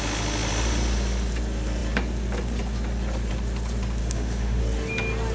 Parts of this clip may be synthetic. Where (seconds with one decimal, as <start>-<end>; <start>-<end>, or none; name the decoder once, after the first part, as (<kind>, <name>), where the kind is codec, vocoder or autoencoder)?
4.0-4.6 (autoencoder, DAC-VAE)